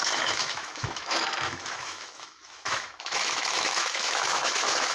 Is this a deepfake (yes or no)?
yes